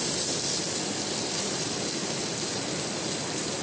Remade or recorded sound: recorded